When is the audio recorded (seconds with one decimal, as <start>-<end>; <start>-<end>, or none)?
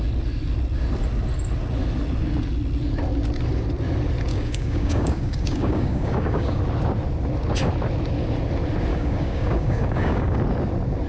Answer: 0.0-4.3; 6.6-8.9; 10.4-11.1